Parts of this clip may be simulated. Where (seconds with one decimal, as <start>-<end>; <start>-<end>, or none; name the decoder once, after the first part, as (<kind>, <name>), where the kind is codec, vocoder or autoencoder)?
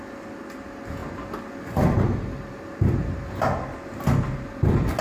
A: none